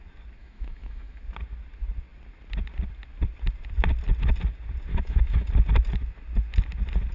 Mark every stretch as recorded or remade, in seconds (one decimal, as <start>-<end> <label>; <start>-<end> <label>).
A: 0.0-0.4 recorded; 0.4-1.2 remade; 1.2-4.9 recorded; 4.9-5.5 remade; 5.5-7.1 recorded